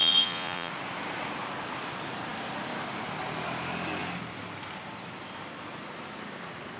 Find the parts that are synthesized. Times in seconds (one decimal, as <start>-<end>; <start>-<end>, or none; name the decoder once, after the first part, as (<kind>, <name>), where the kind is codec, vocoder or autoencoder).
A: 0.0-0.7 (vocoder, Vocos)